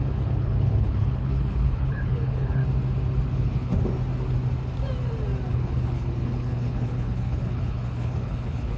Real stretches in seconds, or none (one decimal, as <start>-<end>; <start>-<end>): 2.6-3.3; 3.7-5.5